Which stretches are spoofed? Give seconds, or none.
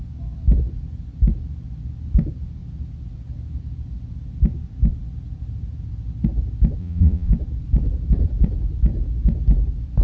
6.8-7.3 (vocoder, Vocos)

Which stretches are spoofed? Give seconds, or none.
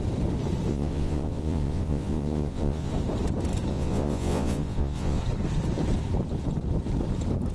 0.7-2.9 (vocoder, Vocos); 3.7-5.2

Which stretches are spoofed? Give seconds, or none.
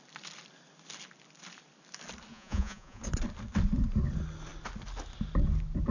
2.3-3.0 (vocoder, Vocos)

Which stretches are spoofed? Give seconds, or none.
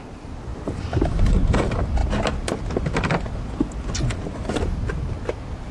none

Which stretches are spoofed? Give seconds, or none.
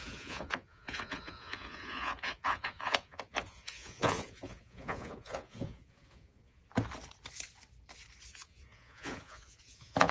0.0-6.6 (vocoder, Vocos); 8.3-10.1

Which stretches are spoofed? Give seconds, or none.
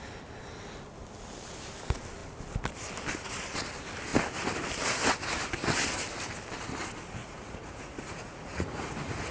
7.2-9.3 (vocoder, Vocos)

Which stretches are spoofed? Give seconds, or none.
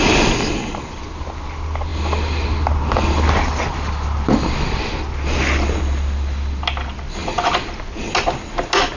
none